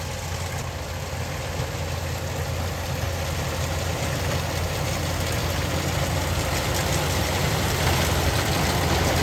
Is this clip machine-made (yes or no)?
no